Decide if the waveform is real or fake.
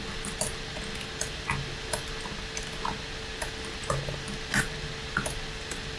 real